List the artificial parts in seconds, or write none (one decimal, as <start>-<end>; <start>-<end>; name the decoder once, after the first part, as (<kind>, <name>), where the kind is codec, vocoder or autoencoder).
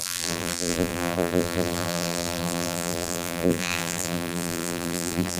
0.0-5.4 (vocoder, BigVGAN v2)